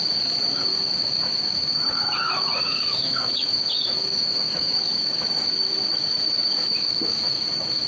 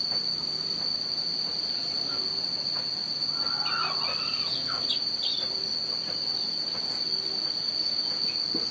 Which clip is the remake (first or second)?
first